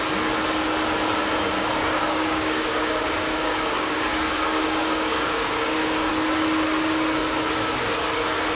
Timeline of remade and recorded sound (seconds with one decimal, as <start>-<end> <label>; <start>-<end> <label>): 0.0-2.0 recorded; 2.0-6.1 remade; 6.1-8.5 recorded